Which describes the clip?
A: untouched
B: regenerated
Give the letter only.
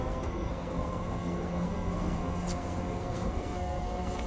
B